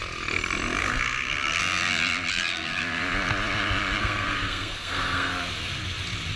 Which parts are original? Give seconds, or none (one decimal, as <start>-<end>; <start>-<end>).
0.0-0.8; 1.6-2.3; 2.8-4.0; 5.3-6.4